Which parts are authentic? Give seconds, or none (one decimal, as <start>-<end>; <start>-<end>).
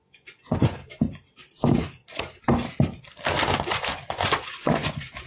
0.8-3.7